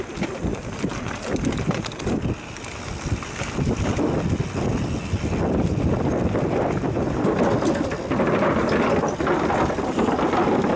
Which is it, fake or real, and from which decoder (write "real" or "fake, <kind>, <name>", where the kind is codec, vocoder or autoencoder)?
real